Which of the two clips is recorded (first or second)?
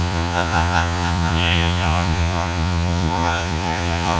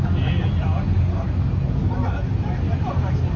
second